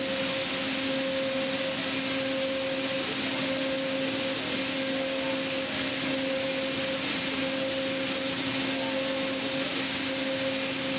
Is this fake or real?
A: real